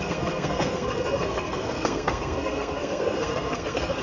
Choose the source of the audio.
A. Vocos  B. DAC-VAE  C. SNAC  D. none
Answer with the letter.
C